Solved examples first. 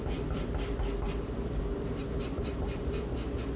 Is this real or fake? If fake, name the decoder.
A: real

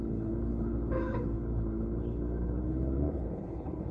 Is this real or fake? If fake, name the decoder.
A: fake, codec, HILCodec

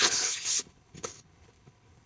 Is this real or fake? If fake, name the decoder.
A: fake, codec, HILCodec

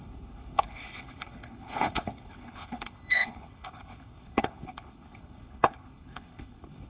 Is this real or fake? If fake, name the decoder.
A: fake, codec, HILCodec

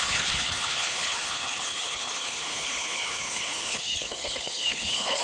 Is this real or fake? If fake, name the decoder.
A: fake, codec, HILCodec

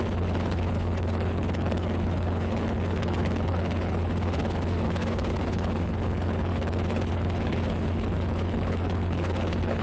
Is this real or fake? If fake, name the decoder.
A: fake, codec, HILCodec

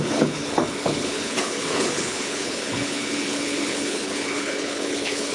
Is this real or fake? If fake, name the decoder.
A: fake, codec, HILCodec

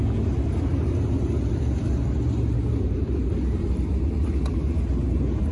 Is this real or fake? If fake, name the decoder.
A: real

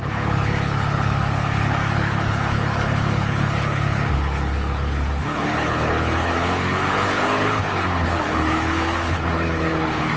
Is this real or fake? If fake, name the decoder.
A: fake, codec, HILCodec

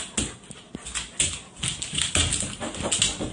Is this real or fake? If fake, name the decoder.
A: real